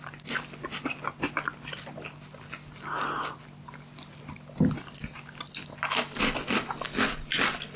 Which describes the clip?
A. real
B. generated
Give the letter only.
A